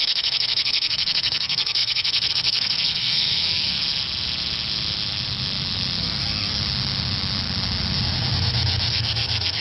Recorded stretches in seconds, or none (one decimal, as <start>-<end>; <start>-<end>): 3.8-6.0; 6.6-8.9

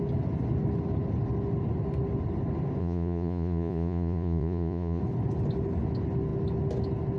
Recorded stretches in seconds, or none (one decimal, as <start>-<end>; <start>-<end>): 0.0-2.8; 5.0-7.2

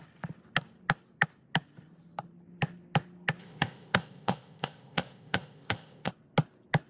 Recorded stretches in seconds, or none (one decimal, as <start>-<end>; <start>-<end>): 0.0-3.4; 6.1-6.9